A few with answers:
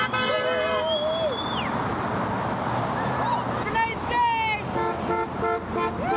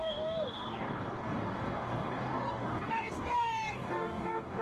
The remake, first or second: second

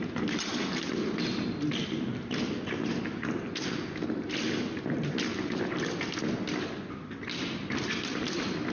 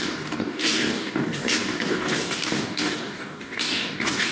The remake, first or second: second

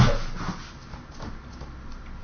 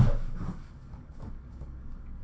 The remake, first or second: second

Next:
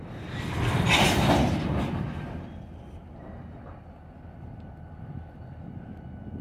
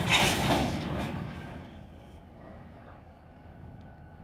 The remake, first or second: second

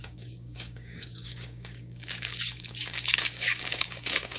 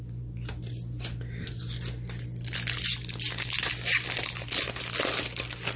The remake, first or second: first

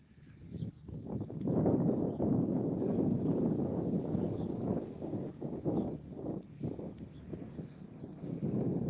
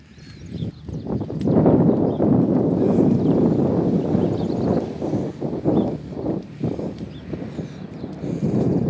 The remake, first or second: first